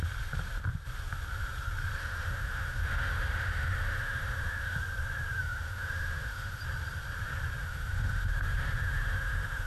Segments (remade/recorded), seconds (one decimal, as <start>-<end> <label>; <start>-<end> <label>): 0.0-2.0 recorded; 2.0-4.8 remade; 4.8-5.4 recorded; 5.4-6.6 remade; 6.6-7.6 recorded; 7.6-9.7 remade